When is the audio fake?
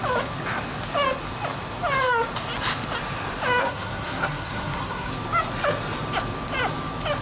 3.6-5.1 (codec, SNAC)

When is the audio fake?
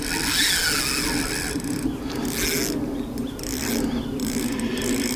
none